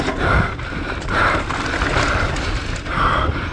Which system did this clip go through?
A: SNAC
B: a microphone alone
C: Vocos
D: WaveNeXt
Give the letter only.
B